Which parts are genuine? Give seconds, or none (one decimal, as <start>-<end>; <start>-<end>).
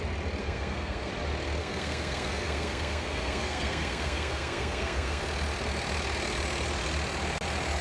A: 0.0-0.4; 1.1-1.6; 5.2-7.8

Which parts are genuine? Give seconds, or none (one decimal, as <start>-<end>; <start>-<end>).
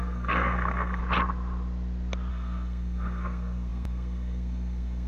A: 1.0-2.3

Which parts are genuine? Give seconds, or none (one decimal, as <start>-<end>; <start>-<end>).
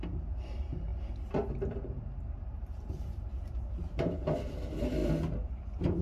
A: 0.0-0.9; 4.5-6.0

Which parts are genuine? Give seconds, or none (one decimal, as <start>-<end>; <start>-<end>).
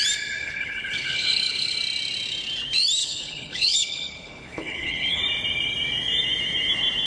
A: 0.0-0.4; 1.8-3.0; 5.2-7.1